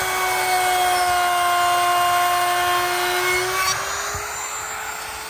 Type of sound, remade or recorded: recorded